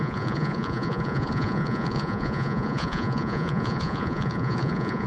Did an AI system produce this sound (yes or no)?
yes